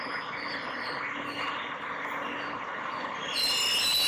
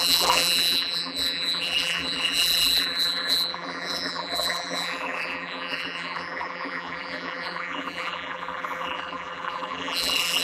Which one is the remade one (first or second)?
second